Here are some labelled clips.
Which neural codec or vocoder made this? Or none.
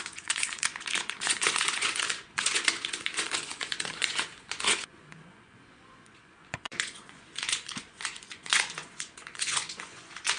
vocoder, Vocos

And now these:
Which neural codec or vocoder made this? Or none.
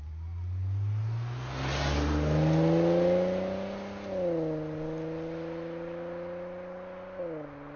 none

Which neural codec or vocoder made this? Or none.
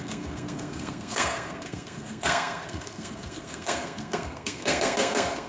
codec, SNAC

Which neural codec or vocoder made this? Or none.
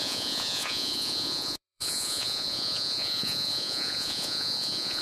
vocoder, Vocos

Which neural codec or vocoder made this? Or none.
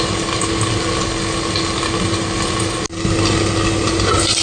none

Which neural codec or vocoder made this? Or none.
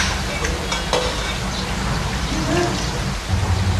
none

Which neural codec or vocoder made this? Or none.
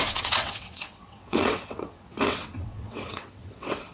vocoder, WaveNeXt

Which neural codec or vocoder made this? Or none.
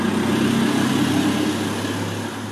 none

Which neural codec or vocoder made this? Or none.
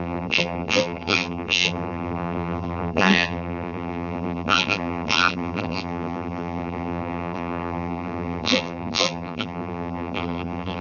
vocoder, BigVGAN v2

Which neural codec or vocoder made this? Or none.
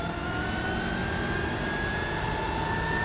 none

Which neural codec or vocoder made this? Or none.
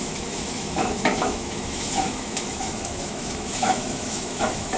autoencoder, DAC-VAE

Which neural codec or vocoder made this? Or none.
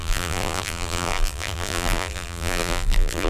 vocoder, BigVGAN v2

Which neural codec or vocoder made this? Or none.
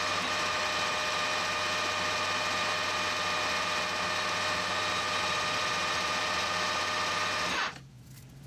none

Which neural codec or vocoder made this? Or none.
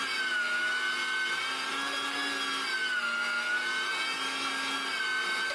none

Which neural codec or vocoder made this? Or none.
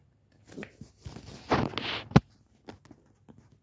none